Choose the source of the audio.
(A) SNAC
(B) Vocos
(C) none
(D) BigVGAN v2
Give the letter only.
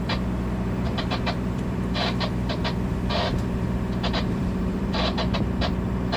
D